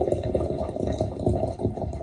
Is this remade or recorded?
remade